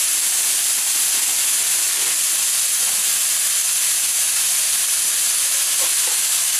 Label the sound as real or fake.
real